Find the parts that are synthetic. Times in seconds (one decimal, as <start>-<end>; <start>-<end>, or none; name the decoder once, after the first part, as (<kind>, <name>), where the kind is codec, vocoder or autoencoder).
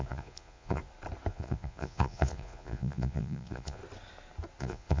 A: 0.0-0.8 (vocoder, Vocos); 1.3-3.8; 4.6-5.0